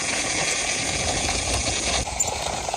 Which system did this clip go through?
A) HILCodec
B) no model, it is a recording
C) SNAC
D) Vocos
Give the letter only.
D